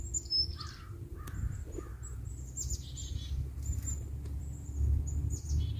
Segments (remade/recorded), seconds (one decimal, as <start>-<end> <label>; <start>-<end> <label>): 0.0-5.8 recorded